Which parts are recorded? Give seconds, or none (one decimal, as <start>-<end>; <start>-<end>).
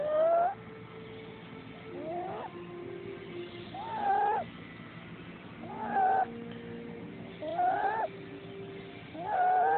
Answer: 0.0-9.8